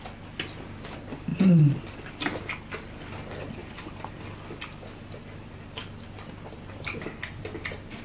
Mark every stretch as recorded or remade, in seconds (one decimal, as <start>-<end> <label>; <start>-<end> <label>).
0.0-3.6 recorded; 3.6-4.2 remade; 4.2-8.0 recorded